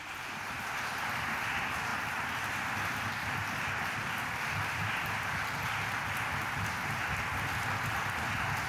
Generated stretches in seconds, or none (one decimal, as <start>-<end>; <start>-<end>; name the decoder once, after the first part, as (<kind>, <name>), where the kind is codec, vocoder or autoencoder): none

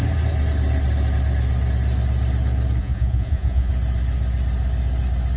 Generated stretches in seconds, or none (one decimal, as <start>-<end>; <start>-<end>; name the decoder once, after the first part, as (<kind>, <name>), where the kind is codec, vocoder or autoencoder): 2.8-3.7 (vocoder, Vocos)

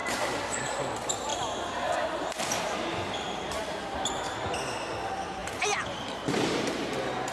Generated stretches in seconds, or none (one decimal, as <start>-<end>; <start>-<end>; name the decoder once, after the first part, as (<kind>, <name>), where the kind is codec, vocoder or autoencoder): 1.3-4.2 (vocoder, BigVGAN v2); 5.4-7.3